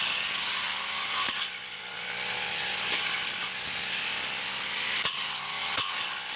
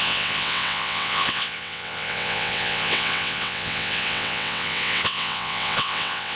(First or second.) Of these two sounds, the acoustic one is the first